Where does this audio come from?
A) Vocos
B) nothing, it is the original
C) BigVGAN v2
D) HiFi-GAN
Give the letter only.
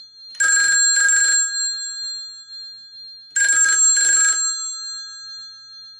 B